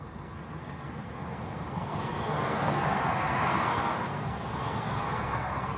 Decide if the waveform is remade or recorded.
remade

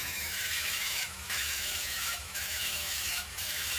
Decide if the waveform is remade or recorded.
remade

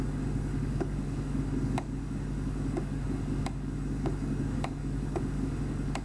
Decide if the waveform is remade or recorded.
remade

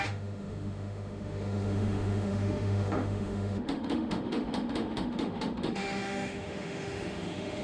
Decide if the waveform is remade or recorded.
remade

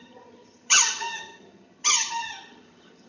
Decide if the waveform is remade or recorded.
remade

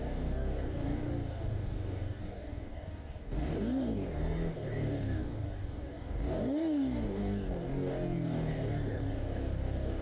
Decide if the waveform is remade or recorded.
remade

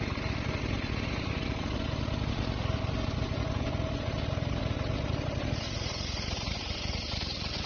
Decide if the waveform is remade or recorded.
recorded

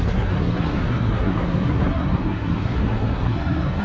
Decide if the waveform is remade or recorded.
remade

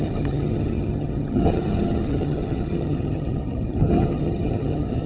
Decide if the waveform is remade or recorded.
remade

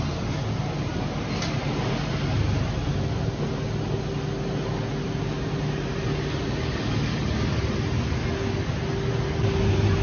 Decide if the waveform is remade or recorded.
recorded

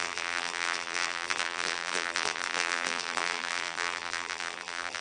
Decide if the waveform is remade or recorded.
remade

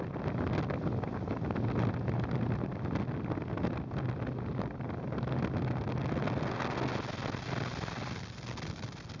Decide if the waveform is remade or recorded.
recorded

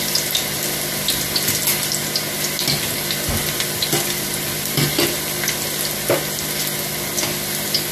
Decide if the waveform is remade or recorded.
recorded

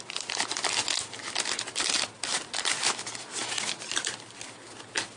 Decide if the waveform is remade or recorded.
recorded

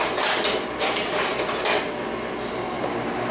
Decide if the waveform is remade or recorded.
recorded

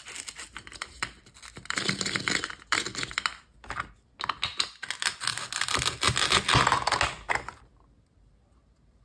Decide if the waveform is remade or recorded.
recorded